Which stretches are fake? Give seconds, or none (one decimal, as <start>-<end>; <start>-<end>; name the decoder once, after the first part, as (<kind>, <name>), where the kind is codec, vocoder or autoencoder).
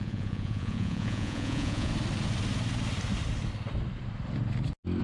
0.0-1.9 (vocoder, Vocos)